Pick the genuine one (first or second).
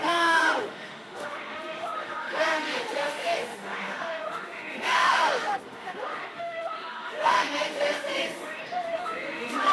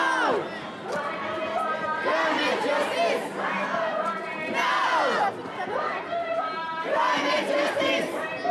second